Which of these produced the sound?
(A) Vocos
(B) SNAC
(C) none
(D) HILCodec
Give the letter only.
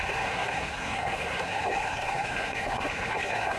B